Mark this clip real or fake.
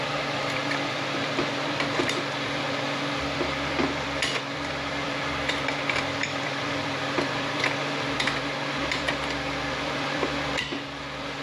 fake